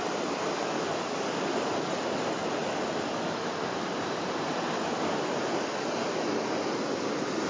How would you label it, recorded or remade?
recorded